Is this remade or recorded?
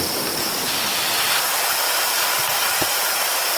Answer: recorded